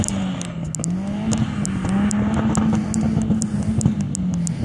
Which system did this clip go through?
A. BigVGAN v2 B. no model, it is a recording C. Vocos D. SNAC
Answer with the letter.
B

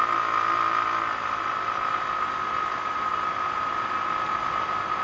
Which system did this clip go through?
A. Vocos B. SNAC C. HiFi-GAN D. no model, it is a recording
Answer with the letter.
D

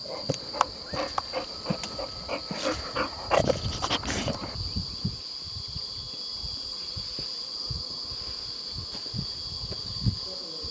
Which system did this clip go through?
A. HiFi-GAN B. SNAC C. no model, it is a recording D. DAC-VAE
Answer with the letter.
C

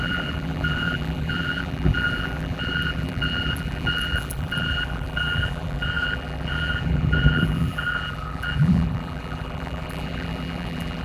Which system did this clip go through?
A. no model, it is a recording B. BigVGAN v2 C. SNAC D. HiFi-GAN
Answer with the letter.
B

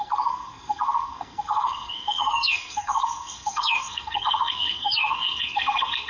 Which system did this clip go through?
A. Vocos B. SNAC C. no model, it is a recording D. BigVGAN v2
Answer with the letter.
B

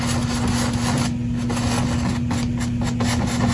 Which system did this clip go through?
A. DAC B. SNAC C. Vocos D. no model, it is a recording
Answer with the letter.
D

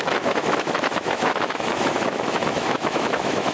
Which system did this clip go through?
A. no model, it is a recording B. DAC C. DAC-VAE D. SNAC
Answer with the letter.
C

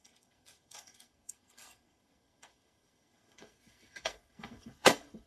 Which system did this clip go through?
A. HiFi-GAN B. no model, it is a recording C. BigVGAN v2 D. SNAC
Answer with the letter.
D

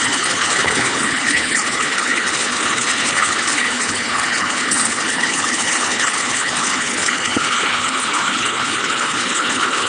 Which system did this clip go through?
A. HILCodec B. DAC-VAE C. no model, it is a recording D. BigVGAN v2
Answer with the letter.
A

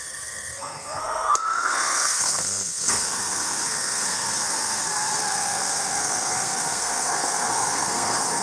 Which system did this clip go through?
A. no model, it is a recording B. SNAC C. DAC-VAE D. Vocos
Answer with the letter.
B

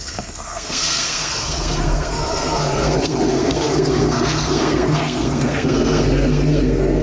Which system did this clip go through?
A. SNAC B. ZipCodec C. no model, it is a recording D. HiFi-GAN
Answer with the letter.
A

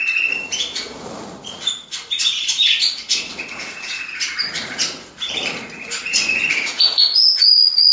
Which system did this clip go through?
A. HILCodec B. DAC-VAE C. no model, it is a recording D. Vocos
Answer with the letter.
D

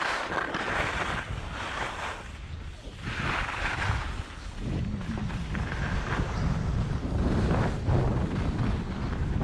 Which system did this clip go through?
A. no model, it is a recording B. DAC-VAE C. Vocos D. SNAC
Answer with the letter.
A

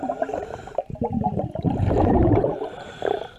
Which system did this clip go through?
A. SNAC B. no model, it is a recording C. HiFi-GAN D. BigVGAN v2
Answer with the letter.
D